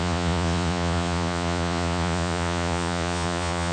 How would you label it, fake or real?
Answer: fake